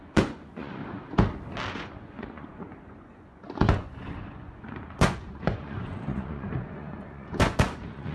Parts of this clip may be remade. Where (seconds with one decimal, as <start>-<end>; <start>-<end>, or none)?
0.0-0.8; 1.7-8.1